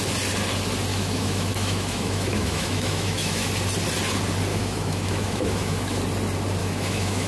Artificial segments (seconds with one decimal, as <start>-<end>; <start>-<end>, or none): 0.9-3.5; 4.5-6.0; 6.6-7.3